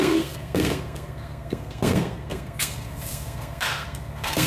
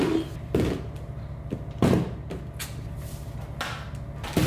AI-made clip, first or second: first